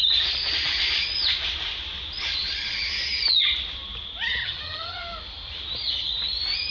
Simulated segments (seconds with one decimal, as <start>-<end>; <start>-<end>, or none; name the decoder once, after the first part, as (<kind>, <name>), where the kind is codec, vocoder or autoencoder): 4.4-5.0 (vocoder, HiFi-GAN)